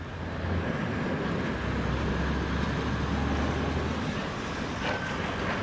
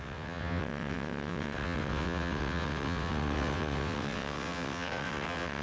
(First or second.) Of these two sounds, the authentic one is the first